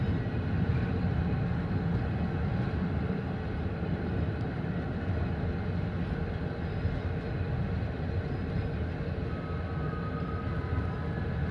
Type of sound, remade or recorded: recorded